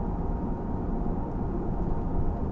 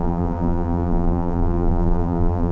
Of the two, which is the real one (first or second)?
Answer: first